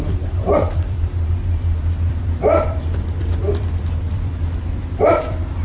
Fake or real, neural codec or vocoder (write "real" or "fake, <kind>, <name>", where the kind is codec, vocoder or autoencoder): fake, vocoder, BigVGAN v2